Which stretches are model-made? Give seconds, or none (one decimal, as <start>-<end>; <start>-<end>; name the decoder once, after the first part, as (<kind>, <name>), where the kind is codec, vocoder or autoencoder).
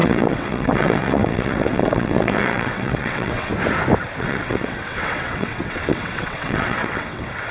0.0-3.5 (vocoder, WaveNeXt); 4.2-7.5